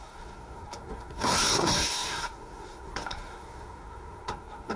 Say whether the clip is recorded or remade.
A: remade